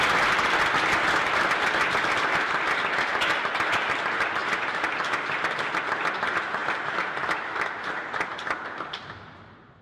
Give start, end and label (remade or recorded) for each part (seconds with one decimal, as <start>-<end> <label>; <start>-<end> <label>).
0.0-9.8 recorded